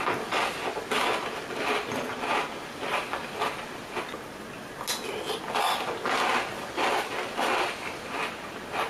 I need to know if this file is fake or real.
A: real